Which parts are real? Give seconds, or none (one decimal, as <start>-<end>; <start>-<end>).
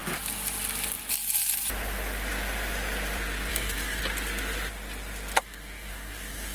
0.0-3.5; 4.0-5.4